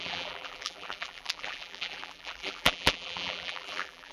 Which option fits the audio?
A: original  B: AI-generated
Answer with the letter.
B